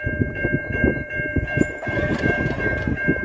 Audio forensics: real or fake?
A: fake